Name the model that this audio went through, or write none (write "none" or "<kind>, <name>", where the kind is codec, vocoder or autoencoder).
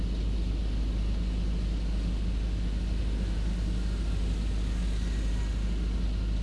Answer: none